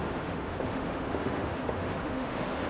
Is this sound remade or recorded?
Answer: remade